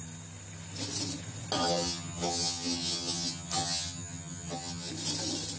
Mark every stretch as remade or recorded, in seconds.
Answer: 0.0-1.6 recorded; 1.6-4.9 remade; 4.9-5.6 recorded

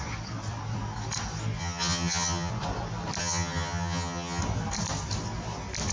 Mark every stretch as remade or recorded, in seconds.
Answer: 0.0-1.6 recorded; 1.6-2.5 remade; 2.5-3.2 recorded; 3.2-4.4 remade; 4.4-5.9 recorded

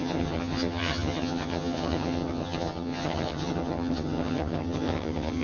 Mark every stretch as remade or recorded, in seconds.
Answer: 0.0-5.4 remade

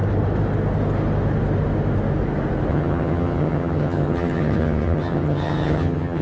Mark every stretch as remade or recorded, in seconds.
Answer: 0.0-2.7 recorded; 2.7-6.2 remade

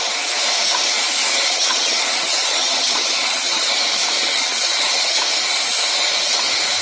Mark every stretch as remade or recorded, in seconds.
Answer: 0.0-1.2 recorded; 1.2-3.7 remade; 3.7-4.2 recorded; 4.2-5.2 remade; 5.2-6.8 recorded

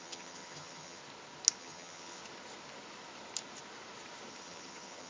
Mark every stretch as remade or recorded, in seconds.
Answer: 0.0-1.0 remade; 1.0-1.6 recorded; 1.6-2.2 remade; 2.2-4.3 recorded; 4.3-5.1 remade